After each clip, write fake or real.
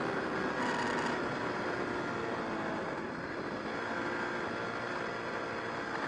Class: real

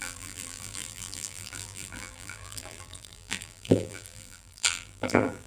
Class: fake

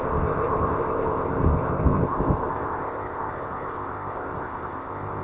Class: fake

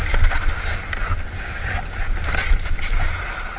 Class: real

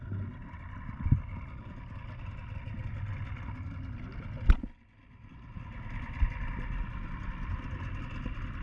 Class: real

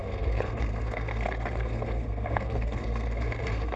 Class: fake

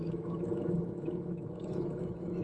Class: fake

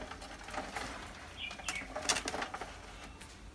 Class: real